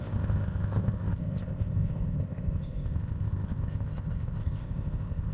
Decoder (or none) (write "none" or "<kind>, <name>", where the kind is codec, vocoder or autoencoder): codec, ZipCodec